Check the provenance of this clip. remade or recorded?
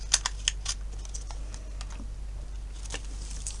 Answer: recorded